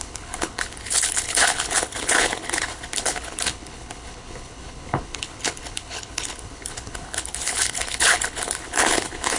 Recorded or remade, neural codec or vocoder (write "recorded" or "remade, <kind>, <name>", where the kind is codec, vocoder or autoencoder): remade, codec, HILCodec